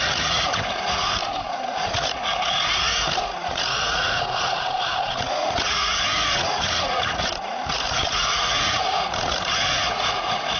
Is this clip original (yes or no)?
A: no